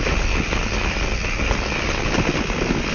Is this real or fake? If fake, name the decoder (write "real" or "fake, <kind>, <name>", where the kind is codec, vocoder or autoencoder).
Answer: real